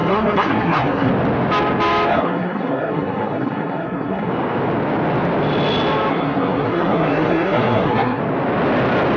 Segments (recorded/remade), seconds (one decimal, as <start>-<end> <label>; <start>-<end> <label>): 0.0-1.1 remade; 1.1-2.1 recorded; 2.1-4.3 remade; 4.3-6.1 recorded; 6.1-8.2 remade; 8.2-9.2 recorded